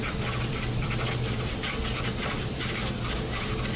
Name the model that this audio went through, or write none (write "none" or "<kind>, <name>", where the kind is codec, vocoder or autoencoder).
vocoder, BigVGAN v2